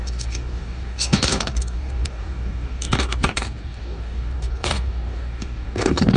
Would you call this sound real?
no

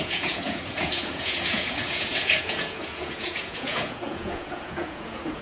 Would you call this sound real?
no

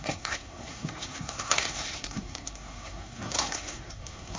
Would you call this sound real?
no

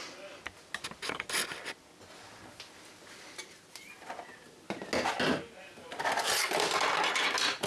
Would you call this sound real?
yes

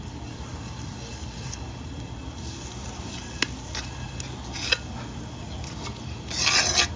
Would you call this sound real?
yes